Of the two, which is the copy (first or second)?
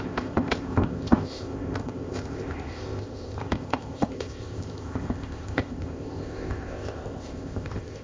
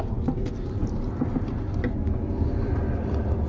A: first